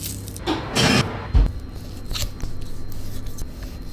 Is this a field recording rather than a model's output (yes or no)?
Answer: yes